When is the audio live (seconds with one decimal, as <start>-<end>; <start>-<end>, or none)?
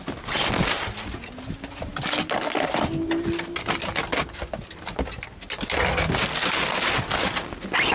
0.0-7.9